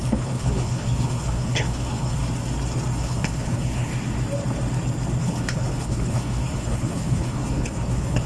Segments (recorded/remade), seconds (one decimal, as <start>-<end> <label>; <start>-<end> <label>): 0.0-2.2 remade; 2.2-3.0 recorded; 3.0-3.9 remade; 3.9-5.2 recorded; 5.2-8.3 remade